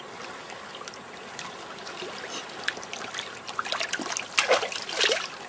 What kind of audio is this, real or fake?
real